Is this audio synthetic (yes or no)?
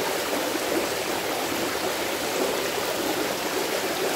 yes